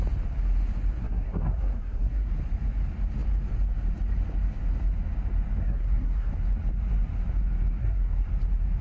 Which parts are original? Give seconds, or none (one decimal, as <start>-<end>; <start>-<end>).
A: 0.0-1.0; 2.3-5.6; 6.3-7.8; 8.3-8.8